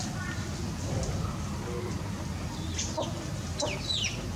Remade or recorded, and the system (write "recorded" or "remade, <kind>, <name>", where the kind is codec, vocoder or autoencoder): recorded